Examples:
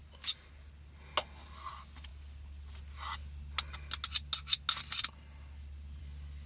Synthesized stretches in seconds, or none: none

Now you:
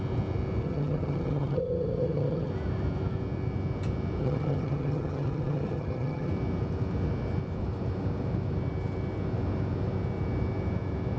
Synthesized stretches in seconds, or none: 0.6-2.5 (vocoder, HiFi-GAN); 4.2-6.3